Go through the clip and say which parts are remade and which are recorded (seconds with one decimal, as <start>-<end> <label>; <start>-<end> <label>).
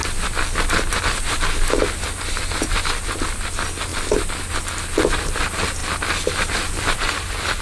0.0-1.0 remade; 1.0-5.8 recorded; 5.8-7.6 remade